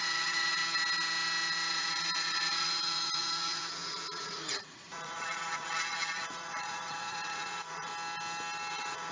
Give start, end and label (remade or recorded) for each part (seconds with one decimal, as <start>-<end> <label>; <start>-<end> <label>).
0.0-0.6 remade; 0.6-1.7 recorded; 1.7-7.9 remade; 7.9-8.7 recorded; 8.7-9.1 remade